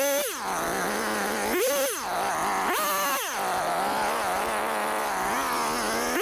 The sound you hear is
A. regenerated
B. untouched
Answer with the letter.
B